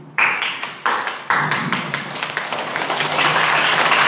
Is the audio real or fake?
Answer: fake